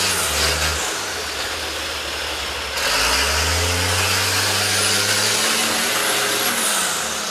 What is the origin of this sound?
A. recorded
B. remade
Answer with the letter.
A